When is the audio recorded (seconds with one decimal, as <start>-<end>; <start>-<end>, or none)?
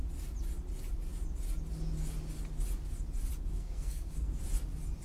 0.0-3.5; 4.4-5.0